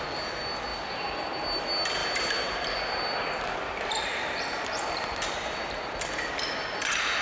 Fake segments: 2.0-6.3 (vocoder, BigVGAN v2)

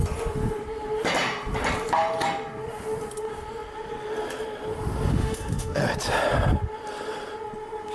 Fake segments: 5.1-5.8 (autoencoder, DAC-VAE)

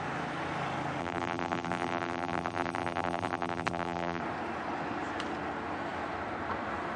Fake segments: 1.0-4.2 (vocoder, BigVGAN v2)

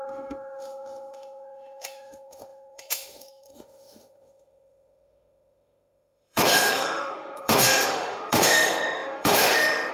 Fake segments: 0.0-9.9 (autoencoder, DAC-VAE)